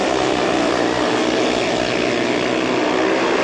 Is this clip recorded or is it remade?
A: recorded